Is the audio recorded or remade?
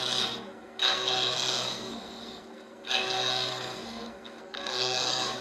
remade